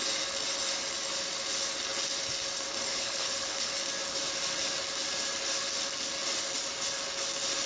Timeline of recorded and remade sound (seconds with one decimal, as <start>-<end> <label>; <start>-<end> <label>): 0.0-2.9 recorded; 2.9-3.7 remade; 3.7-7.7 recorded